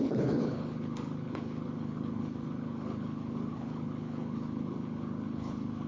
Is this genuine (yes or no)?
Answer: no